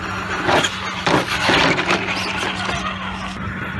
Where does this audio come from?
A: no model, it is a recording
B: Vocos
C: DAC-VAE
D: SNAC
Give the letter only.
A